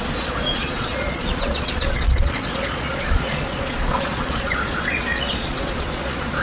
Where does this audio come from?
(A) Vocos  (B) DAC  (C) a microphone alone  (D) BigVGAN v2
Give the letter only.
A